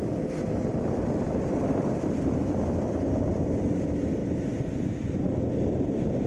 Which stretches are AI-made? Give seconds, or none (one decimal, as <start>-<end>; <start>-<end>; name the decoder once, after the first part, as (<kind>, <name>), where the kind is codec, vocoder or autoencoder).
0.0-1.0 (vocoder, BigVGAN v2); 1.7-4.2; 5.2-6.3